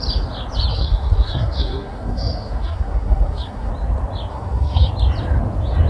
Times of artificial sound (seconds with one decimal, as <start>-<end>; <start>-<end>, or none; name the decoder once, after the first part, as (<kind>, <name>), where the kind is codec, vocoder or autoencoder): 0.7-3.7 (codec, SNAC); 4.3-4.9